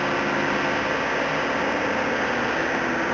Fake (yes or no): no